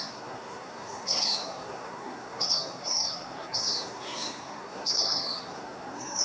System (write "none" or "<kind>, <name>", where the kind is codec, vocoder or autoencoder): codec, SNAC